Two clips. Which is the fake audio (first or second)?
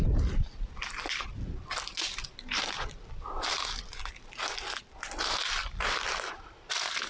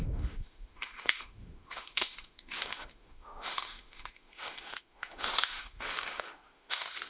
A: second